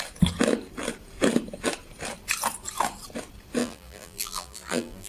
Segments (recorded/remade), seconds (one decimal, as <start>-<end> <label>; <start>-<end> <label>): 0.0-3.6 recorded; 3.6-5.1 remade